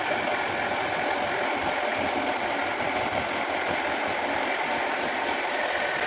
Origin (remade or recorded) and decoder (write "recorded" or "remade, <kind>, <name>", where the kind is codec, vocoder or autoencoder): recorded